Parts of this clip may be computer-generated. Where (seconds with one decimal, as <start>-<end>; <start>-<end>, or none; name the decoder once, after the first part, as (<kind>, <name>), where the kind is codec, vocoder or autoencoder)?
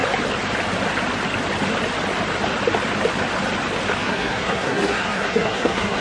4.0-6.0 (codec, SNAC)